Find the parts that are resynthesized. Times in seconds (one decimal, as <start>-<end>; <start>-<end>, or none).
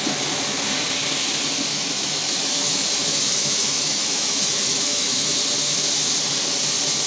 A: 1.7-5.4